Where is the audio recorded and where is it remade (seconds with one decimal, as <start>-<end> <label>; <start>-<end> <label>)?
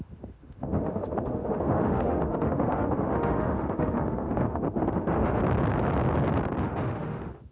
0.0-5.4 remade; 5.4-6.6 recorded; 6.6-7.5 remade